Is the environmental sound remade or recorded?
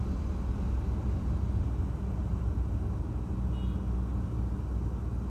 recorded